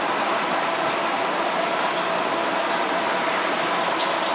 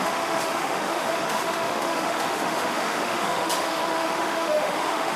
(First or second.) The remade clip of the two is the second